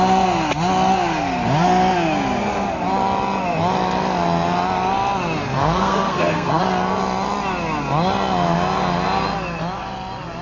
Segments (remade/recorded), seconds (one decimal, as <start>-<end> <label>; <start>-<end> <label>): 0.0-5.6 recorded; 5.6-6.6 remade; 6.6-10.4 recorded